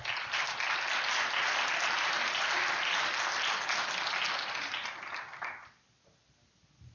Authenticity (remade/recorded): recorded